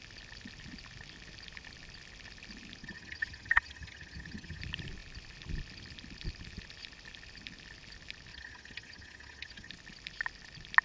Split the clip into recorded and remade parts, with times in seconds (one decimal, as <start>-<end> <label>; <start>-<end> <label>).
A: 0.0-2.8 recorded; 2.8-4.6 remade; 4.6-8.3 recorded; 8.3-9.7 remade; 9.7-10.8 recorded